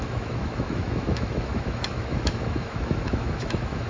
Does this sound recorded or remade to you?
remade